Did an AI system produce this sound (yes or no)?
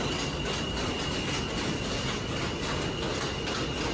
no